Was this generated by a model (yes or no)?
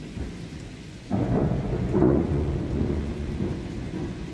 yes